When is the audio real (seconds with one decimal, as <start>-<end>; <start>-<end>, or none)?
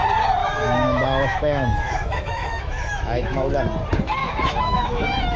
0.0-0.4; 3.6-4.2